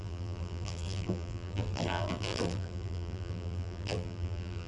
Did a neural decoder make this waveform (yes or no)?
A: yes